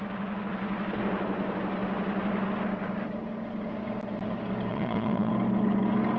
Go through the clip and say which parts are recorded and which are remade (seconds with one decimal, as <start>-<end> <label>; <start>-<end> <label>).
0.0-4.7 recorded; 4.7-5.3 remade; 5.3-6.2 recorded